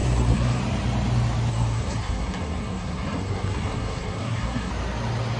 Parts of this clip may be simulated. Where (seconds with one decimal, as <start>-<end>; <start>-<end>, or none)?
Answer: 0.0-0.6; 1.5-4.7

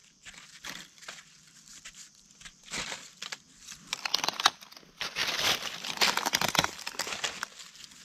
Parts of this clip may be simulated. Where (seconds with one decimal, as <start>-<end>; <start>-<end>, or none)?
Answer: 0.0-4.4; 5.2-7.3

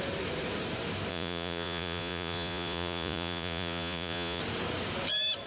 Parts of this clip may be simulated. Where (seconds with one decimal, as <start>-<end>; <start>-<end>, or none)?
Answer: 1.1-4.4

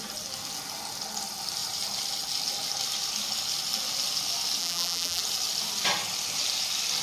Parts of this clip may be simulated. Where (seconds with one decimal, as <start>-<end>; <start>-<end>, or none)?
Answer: 4.6-5.2

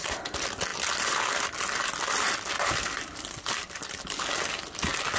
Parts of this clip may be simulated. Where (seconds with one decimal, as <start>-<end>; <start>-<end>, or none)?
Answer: 0.7-3.8

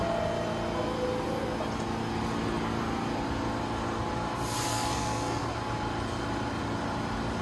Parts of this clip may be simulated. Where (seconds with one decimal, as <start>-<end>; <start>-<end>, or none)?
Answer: 4.7-5.5